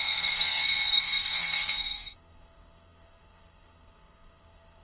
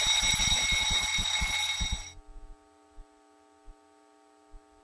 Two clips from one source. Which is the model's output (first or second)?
first